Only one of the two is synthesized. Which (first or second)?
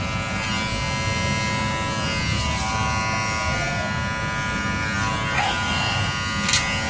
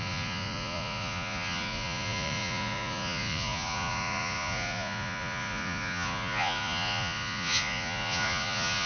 second